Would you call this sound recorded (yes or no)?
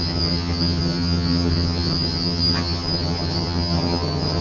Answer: no